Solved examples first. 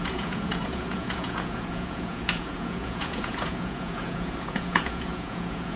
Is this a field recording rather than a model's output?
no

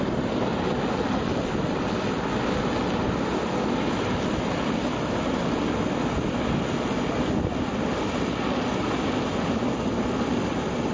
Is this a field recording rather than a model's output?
yes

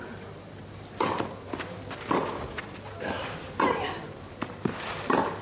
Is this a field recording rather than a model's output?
yes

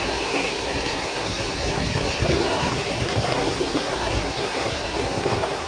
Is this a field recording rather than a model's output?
no